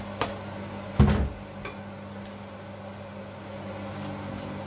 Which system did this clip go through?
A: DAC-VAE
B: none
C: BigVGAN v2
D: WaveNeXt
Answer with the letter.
B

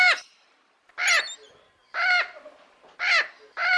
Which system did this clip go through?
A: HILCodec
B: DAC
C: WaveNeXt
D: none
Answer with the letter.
D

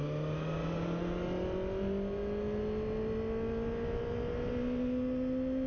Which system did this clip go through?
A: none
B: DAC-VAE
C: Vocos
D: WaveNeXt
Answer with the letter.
A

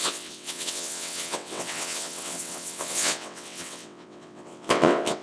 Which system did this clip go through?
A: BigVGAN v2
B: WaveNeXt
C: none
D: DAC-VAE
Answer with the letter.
B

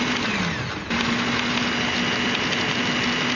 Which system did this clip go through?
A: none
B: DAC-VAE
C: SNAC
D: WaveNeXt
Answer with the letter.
A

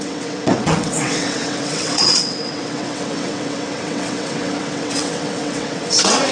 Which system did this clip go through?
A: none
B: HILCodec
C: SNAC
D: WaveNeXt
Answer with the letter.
D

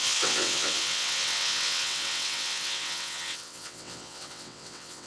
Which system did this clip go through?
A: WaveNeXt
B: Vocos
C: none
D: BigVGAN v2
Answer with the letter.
A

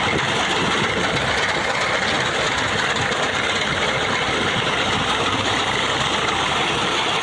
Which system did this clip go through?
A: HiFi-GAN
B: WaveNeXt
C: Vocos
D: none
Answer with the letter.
D